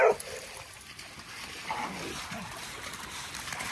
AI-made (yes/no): no